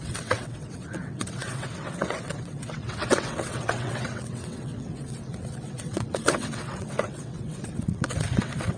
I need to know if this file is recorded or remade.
remade